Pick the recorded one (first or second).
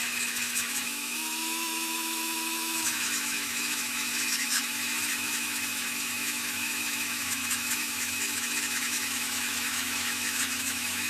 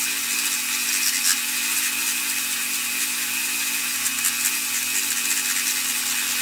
second